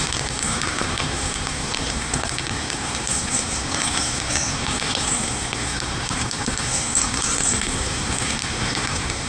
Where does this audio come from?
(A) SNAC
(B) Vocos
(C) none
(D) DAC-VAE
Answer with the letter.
A